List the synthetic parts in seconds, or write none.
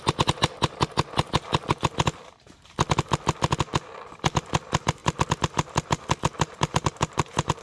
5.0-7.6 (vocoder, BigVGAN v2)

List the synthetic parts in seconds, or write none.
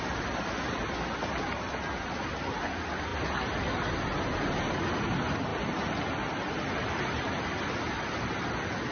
none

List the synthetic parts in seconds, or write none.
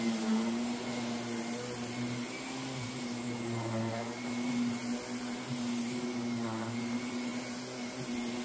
none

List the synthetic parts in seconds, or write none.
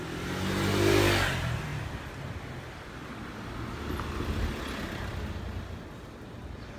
none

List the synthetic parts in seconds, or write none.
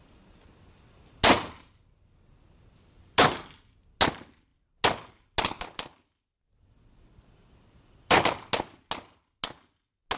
none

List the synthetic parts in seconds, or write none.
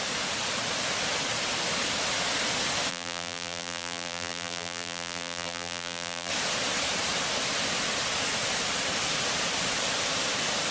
2.9-6.3 (vocoder, BigVGAN v2)